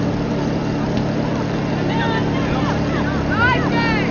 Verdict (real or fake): real